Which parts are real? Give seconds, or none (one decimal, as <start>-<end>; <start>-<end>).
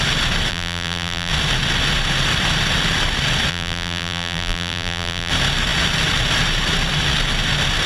0.0-0.5; 1.3-3.5; 5.3-7.9